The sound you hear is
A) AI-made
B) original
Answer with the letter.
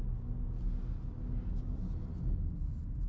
B